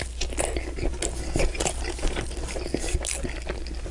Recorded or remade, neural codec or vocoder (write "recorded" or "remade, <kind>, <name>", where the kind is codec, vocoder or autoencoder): recorded